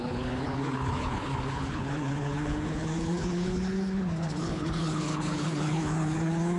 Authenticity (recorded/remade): remade